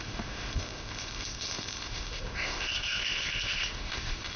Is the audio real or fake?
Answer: fake